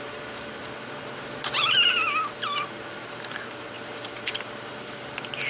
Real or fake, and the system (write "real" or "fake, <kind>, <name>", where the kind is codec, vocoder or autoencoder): fake, vocoder, BigVGAN v2